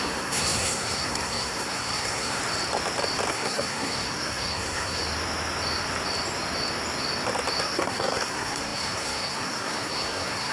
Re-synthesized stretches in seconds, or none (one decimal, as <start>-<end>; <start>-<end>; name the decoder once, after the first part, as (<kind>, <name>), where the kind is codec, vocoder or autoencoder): 0.0-2.4 (codec, SNAC); 3.3-5.0; 7.6-10.5